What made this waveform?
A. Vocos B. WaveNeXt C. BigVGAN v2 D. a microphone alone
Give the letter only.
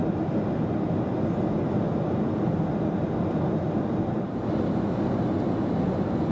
D